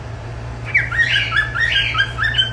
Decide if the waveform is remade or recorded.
remade